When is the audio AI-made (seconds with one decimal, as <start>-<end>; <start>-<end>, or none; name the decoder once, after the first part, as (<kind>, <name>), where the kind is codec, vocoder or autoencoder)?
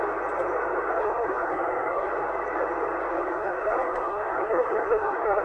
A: 1.0-2.1 (codec, SNAC); 3.1-5.4